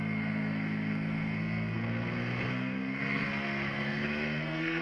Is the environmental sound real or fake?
fake